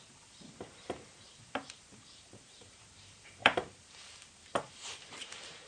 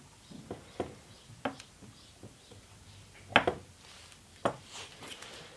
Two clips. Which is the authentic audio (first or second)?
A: second